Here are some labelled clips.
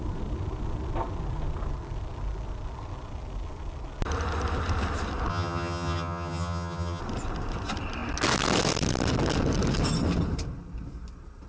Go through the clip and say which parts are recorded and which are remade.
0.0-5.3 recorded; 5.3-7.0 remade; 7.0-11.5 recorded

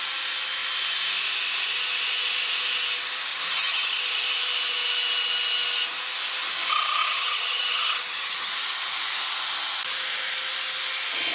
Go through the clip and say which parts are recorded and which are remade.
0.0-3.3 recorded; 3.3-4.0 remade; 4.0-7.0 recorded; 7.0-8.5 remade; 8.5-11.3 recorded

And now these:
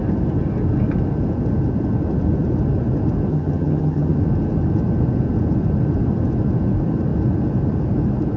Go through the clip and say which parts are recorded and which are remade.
0.0-3.3 recorded; 3.3-4.2 remade; 4.2-8.4 recorded

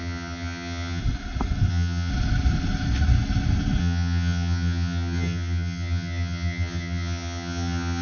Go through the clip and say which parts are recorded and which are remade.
0.0-1.0 remade; 1.0-1.7 recorded; 1.7-2.1 remade; 2.1-3.8 recorded; 3.8-8.0 remade

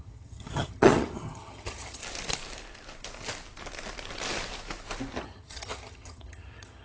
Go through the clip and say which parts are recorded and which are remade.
0.0-2.0 remade; 2.0-5.2 recorded; 5.2-6.8 remade

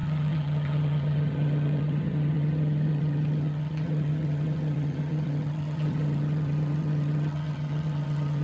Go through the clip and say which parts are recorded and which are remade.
0.0-8.4 remade